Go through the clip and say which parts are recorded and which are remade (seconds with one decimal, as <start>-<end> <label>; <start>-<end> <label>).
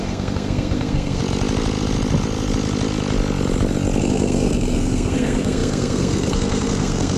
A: 0.0-1.2 remade; 1.2-4.0 recorded; 4.0-7.2 remade